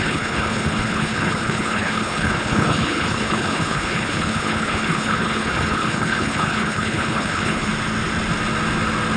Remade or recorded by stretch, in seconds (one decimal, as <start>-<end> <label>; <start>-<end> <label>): 0.0-7.7 remade; 7.7-9.2 recorded